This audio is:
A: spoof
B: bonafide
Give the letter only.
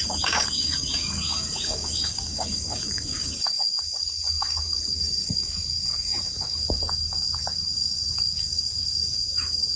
A